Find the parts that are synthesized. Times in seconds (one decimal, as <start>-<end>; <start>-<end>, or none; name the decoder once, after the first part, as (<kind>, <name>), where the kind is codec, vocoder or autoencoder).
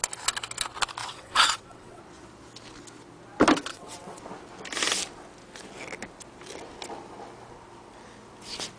1.0-2.0 (vocoder, WaveNeXt); 3.7-4.2